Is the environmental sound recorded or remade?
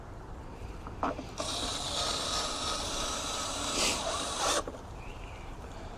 remade